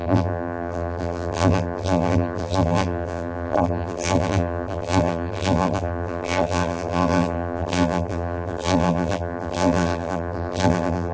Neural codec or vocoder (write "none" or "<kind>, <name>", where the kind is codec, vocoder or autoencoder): vocoder, BigVGAN v2